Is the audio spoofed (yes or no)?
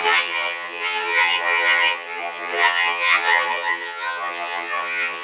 yes